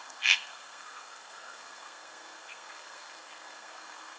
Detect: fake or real fake